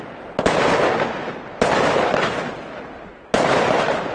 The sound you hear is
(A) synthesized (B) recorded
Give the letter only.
B